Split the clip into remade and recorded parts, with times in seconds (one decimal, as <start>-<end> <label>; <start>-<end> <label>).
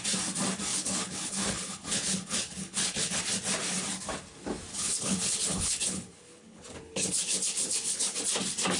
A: 0.0-0.7 recorded; 0.7-3.2 remade; 3.2-4.7 recorded; 4.7-8.2 remade; 8.2-8.8 recorded